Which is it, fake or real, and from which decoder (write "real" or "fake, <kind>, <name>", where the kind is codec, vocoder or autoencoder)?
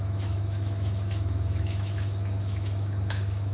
fake, autoencoder, DAC-VAE